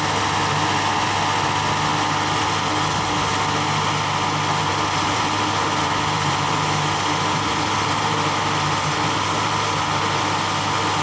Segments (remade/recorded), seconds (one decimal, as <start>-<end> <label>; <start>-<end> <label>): 0.0-4.7 recorded; 4.7-9.7 remade; 9.7-11.0 recorded